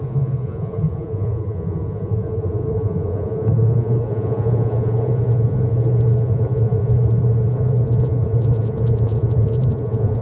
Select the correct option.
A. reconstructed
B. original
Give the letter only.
A